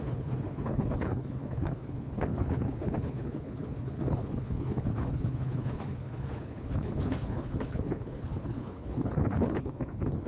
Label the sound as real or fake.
fake